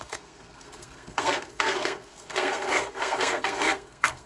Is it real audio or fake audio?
fake